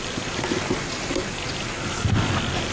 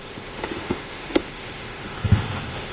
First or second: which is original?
first